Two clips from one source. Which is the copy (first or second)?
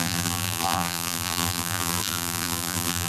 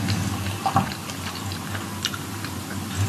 first